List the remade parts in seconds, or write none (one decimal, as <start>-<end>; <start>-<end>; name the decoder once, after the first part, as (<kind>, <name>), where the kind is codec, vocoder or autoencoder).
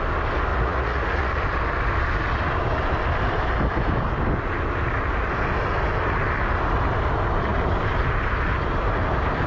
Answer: 0.5-1.3 (vocoder, Vocos)